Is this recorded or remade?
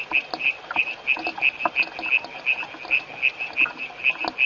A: recorded